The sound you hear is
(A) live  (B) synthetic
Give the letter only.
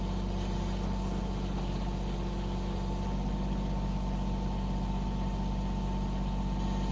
A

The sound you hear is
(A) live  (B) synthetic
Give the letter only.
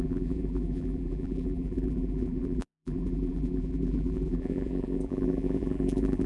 B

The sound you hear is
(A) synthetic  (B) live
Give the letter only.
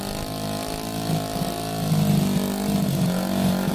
B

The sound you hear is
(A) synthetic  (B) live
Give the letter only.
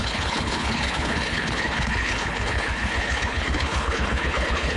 A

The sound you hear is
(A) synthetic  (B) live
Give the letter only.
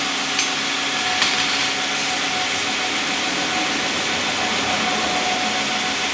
B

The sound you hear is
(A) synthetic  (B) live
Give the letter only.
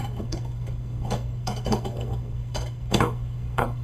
A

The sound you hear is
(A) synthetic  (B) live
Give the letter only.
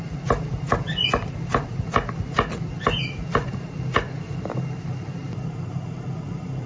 B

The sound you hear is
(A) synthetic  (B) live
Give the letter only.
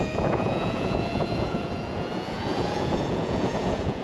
A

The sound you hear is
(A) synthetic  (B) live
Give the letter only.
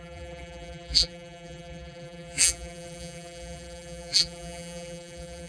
A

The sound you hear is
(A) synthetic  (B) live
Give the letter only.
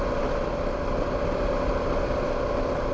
B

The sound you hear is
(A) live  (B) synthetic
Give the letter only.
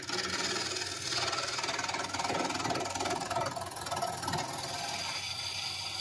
A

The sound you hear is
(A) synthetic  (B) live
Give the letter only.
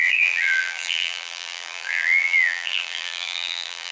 A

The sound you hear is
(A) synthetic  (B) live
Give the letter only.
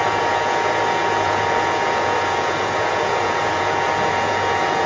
A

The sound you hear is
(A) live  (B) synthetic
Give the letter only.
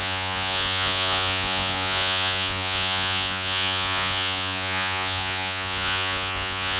B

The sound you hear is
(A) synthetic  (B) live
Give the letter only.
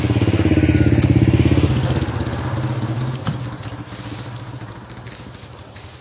B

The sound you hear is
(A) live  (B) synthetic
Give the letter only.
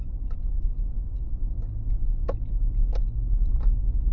A